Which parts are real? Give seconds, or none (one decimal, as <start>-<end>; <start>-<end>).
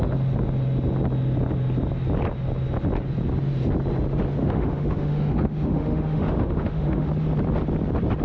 0.0-4.4; 7.1-8.2